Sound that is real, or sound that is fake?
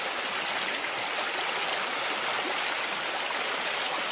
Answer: real